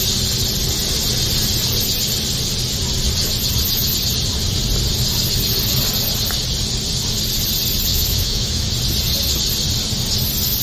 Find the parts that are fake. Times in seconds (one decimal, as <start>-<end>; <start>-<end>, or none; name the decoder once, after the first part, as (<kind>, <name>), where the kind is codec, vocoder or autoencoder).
7.9-8.7 (autoencoder, DAC-VAE)